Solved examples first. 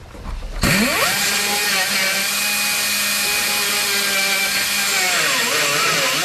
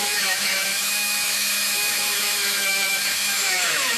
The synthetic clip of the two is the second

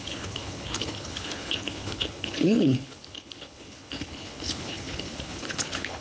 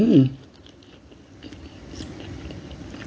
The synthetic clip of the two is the first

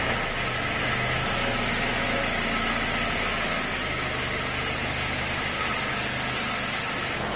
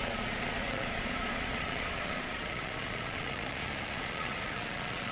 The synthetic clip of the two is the second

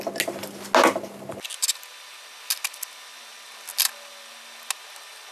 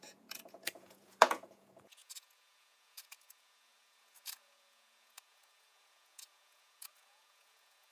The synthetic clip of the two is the second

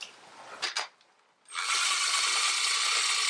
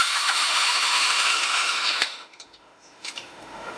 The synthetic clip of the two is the second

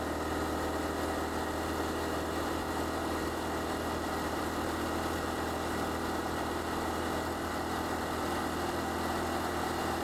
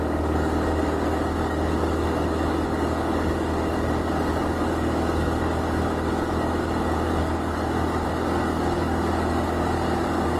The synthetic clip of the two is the second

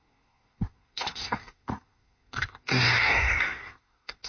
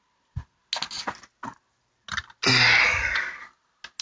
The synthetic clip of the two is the first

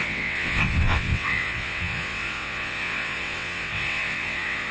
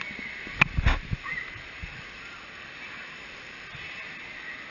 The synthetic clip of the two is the first